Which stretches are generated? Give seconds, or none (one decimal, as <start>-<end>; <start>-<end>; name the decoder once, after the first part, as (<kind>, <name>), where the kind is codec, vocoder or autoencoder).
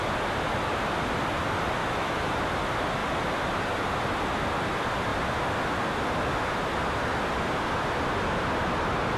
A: 1.8-2.3 (autoencoder, DAC-VAE)